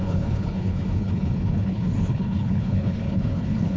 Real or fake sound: fake